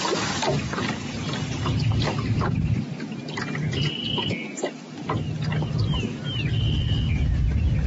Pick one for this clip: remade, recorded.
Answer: recorded